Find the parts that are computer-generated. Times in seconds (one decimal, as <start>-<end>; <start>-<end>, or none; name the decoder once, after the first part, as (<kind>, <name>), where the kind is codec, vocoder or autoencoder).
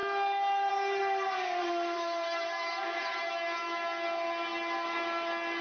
1.6-3.3 (vocoder, BigVGAN v2)